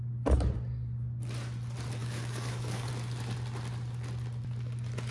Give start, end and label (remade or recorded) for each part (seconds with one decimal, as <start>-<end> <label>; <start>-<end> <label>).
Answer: 0.0-2.0 recorded; 2.0-2.9 remade; 2.9-5.1 recorded